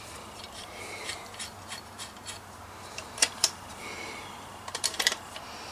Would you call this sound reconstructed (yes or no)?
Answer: yes